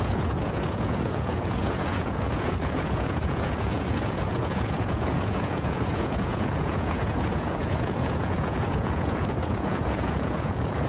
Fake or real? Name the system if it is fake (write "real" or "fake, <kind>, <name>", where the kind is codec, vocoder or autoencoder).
fake, vocoder, Vocos